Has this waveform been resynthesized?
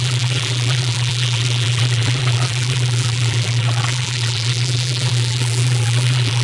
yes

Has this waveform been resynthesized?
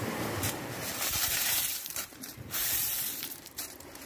yes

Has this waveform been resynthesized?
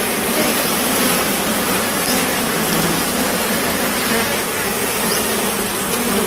yes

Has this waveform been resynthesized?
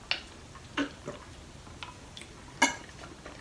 no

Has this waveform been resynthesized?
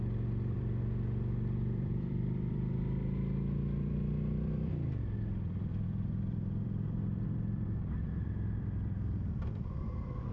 yes